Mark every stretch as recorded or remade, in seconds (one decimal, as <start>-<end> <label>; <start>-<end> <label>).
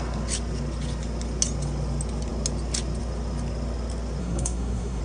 0.0-4.2 recorded; 4.2-5.0 remade